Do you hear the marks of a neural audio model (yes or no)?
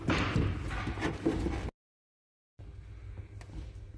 no